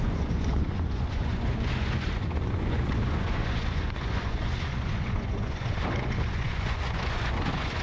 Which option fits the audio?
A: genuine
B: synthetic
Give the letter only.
B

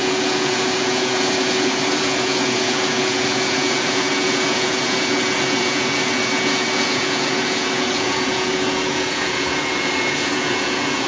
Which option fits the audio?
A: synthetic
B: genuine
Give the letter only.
A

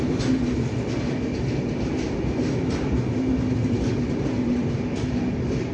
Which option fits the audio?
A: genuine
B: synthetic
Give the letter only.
A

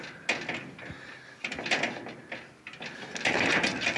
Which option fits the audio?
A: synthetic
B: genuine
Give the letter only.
B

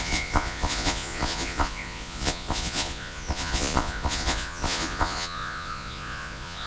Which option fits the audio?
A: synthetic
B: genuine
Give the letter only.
A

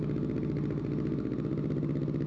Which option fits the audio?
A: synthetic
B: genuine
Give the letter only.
B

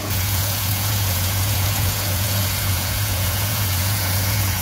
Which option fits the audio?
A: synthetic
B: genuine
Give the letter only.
A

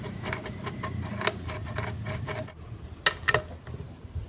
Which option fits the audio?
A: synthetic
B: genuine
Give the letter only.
B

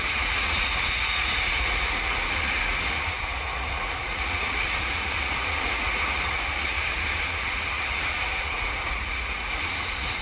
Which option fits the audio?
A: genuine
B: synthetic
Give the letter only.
B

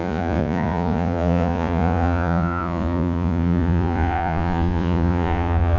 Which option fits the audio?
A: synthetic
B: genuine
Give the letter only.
A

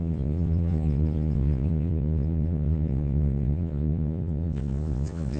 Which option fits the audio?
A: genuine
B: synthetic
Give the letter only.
B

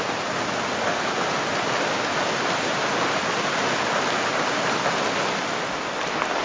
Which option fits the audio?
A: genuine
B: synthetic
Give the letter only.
A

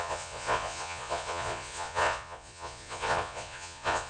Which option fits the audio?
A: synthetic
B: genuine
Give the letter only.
A